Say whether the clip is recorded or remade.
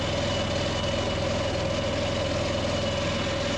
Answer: recorded